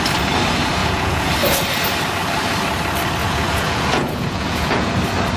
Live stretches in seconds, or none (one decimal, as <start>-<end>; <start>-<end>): 0.0-0.8; 1.3-3.2; 4.9-5.4